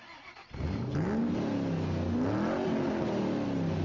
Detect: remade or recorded recorded